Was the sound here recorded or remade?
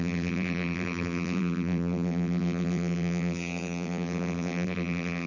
remade